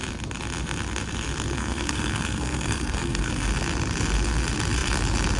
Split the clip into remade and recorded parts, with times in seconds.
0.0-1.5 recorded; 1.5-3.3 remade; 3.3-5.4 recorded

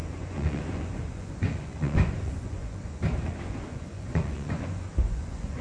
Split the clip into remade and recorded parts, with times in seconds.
0.0-5.6 remade

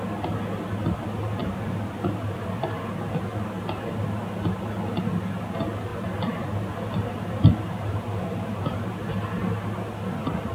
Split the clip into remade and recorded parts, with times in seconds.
0.0-1.4 recorded; 1.4-2.9 remade; 2.9-5.9 recorded; 5.9-9.1 remade; 9.1-10.5 recorded

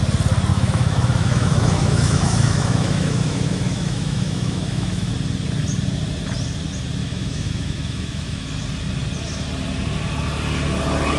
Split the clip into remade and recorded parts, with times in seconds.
0.0-0.5 recorded; 0.5-5.1 remade; 5.1-7.0 recorded; 7.0-8.5 remade; 8.5-11.2 recorded

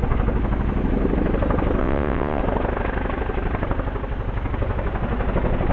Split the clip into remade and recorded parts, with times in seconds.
0.0-1.8 recorded; 1.8-2.4 remade; 2.4-5.7 recorded